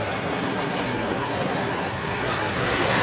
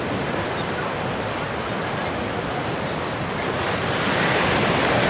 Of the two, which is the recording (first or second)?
second